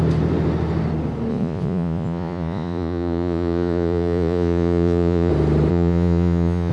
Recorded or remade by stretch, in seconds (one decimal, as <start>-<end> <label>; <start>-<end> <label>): 0.0-1.3 recorded; 1.3-5.3 remade; 5.3-5.7 recorded; 5.7-6.7 remade